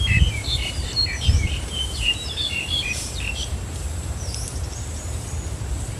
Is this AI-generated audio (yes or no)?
yes